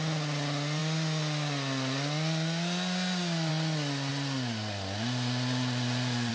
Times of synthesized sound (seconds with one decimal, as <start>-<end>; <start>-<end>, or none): none